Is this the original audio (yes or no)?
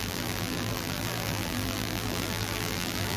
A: no